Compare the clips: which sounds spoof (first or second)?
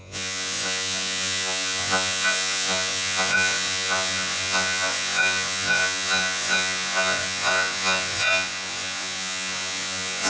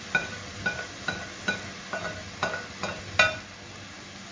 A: first